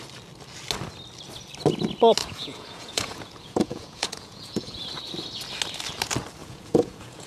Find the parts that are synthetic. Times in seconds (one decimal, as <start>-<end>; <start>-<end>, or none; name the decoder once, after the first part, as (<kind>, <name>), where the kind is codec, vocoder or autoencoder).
2.2-4.9 (vocoder, Vocos); 6.4-7.3